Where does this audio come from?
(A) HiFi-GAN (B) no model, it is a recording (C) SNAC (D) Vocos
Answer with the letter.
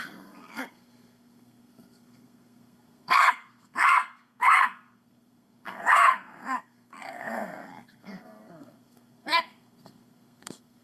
C